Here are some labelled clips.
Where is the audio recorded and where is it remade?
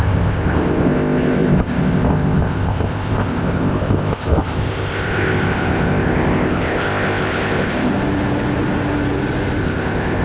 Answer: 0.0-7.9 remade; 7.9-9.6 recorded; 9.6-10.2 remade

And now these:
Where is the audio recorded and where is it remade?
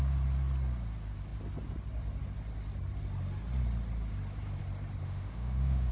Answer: 0.0-5.0 recorded; 5.0-5.9 remade